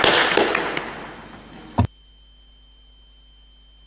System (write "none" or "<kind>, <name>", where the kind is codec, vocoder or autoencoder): none